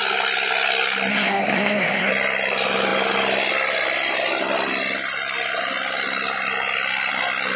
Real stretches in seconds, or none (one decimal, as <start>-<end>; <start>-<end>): 0.0-1.1; 2.1-7.6

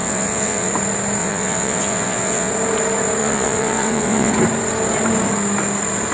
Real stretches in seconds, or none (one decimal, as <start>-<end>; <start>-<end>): 0.7-1.2; 2.5-3.2; 4.3-6.1

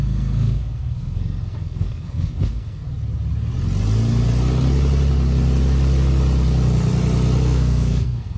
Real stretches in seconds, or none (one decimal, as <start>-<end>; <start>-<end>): 2.8-7.4

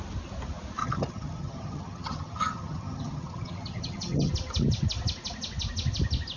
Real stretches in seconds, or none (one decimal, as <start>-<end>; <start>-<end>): 0.0-0.8; 4.3-6.4

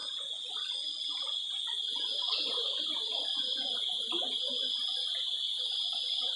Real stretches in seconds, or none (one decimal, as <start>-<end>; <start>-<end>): 0.0-6.4

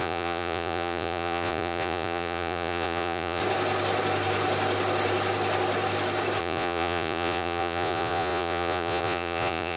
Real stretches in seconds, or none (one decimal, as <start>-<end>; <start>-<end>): 3.4-6.4

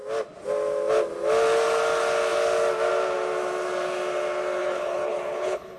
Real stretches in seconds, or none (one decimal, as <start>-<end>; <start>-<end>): 0.0-4.6

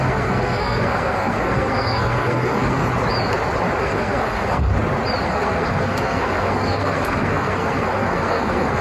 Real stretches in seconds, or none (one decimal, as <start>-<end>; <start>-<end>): 2.8-3.8; 4.7-5.2